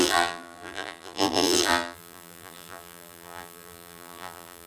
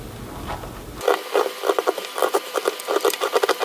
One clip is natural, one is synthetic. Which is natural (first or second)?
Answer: second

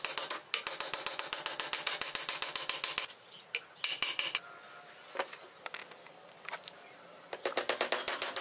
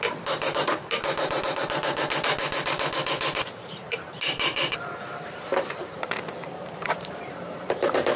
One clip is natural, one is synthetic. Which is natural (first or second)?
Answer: first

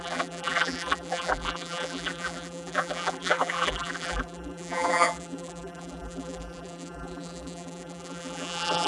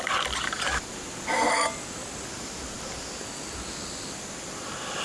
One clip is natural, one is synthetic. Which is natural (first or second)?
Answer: second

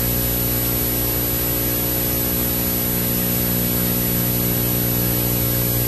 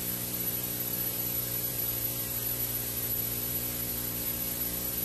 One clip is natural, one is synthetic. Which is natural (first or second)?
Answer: first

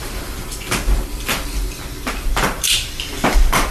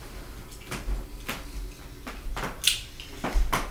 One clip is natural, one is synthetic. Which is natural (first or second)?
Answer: second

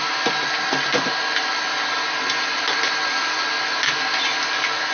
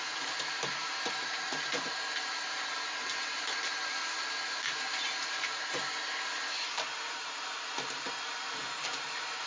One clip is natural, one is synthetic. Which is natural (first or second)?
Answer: first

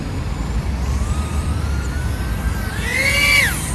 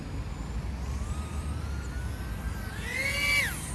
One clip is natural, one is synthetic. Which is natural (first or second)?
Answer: second